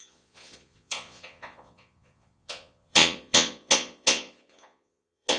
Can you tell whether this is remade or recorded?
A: remade